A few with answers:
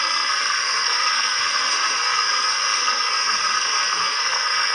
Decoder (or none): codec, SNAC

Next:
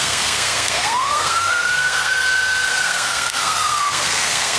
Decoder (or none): codec, SNAC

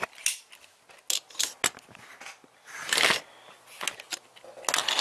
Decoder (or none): none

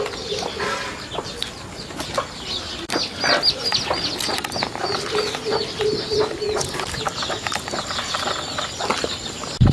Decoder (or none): none